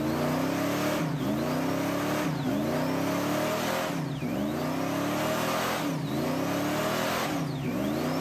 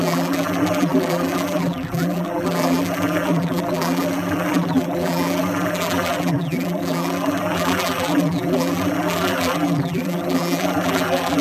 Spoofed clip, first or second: second